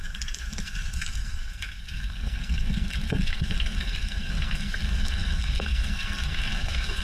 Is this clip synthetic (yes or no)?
yes